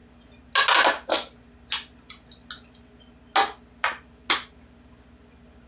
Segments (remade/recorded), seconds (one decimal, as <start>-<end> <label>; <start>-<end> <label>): 0.0-5.7 recorded